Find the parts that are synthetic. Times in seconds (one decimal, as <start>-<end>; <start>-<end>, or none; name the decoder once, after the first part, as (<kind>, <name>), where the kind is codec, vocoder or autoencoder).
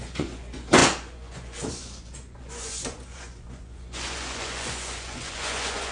0.0-5.9 (vocoder, Vocos)